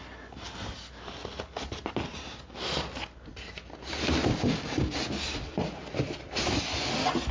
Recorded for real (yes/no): yes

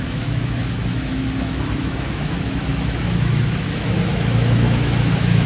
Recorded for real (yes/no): no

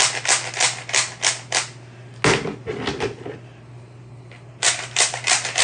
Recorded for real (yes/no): yes